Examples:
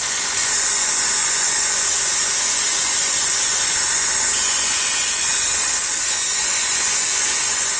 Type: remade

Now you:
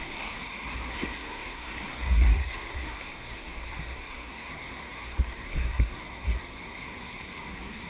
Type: remade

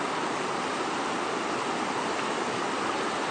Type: recorded